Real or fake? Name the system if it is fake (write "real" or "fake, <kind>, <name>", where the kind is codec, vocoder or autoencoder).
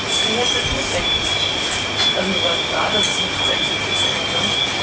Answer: real